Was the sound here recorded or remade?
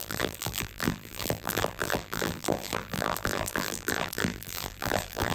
remade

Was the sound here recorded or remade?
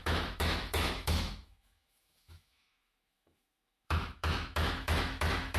remade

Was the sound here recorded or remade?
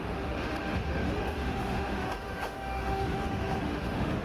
remade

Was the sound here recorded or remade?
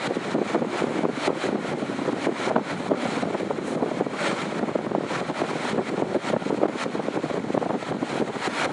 recorded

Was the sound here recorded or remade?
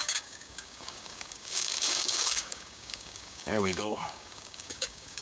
remade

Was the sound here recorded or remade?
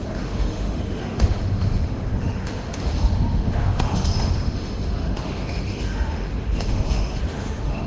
remade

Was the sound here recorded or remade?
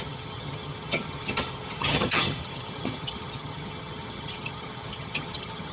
remade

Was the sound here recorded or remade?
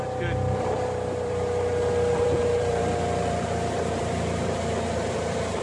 remade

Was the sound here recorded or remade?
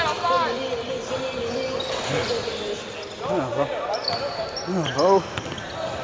recorded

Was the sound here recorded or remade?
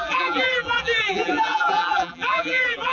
remade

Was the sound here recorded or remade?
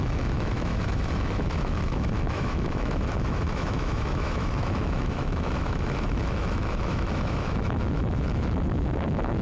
remade